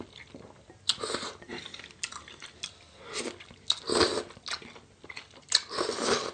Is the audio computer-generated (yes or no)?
no